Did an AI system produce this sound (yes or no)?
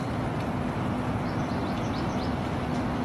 no